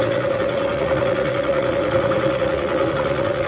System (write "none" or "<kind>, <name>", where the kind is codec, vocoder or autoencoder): vocoder, Vocos